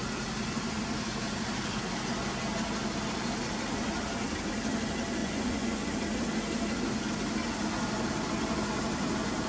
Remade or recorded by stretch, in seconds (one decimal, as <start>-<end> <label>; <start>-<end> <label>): 0.0-5.2 recorded; 5.2-5.9 remade; 5.9-9.5 recorded